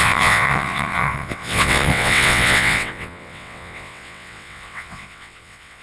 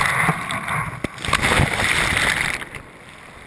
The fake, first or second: first